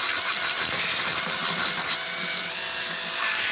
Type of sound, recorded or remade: recorded